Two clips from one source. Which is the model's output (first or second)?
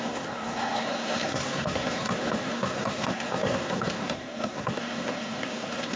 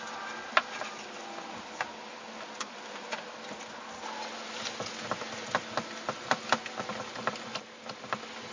first